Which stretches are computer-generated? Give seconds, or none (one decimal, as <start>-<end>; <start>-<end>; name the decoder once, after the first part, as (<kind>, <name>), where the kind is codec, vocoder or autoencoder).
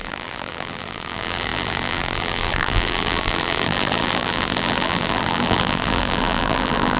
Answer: 0.0-7.0 (vocoder, BigVGAN v2)